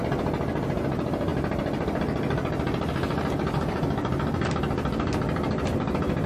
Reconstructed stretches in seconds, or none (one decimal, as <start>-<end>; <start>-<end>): none